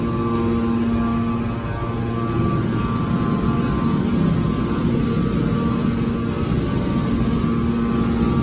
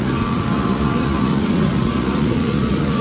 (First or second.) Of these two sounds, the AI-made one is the second